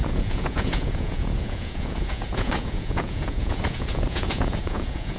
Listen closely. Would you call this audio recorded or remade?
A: remade